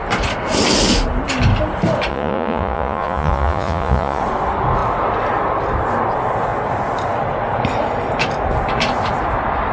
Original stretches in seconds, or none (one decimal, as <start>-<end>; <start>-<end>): 0.0-2.1; 4.2-9.7